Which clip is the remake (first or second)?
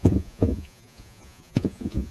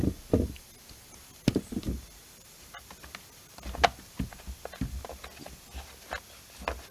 first